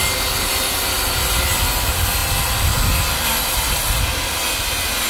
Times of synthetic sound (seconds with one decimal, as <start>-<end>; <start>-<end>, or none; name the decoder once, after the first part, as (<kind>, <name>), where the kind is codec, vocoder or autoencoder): 0.0-1.3 (vocoder, BigVGAN v2); 2.2-3.6